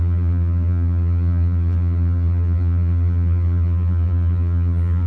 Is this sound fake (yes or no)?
yes